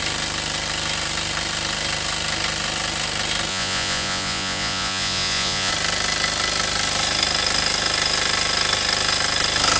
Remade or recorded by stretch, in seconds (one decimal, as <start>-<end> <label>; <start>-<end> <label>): 0.0-3.5 recorded; 3.5-5.7 remade; 5.7-9.8 recorded